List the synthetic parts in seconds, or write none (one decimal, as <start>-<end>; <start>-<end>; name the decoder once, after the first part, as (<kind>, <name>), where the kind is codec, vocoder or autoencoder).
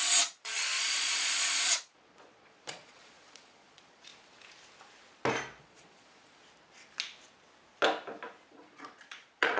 0.0-4.1 (vocoder, Vocos); 5.6-6.4; 8.5-9.6